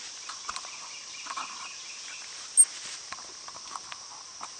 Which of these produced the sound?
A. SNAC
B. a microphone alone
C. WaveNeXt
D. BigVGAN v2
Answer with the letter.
B